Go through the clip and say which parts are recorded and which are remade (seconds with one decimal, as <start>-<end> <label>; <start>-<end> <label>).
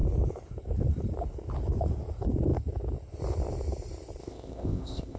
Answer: 0.0-4.2 recorded; 4.2-5.2 remade